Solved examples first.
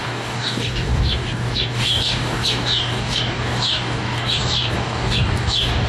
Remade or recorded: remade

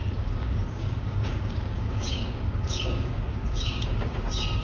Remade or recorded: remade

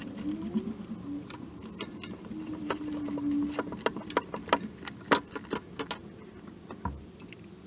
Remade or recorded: recorded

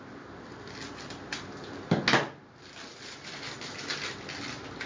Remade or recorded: recorded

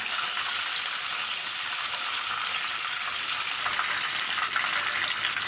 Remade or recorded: recorded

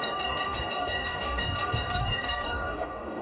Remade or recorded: remade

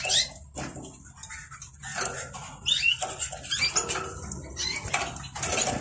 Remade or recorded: recorded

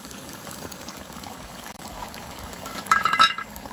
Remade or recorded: remade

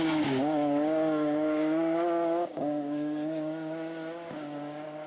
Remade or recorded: remade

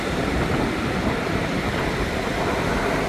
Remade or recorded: recorded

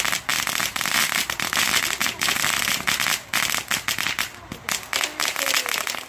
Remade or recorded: recorded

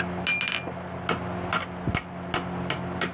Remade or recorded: recorded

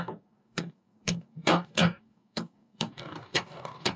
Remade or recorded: remade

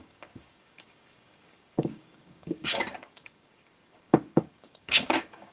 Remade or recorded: remade